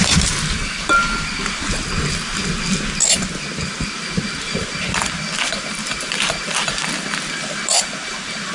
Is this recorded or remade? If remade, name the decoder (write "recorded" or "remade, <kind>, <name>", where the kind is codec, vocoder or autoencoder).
recorded